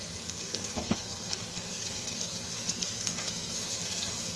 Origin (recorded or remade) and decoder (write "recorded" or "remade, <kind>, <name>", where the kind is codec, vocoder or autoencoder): remade, codec, SNAC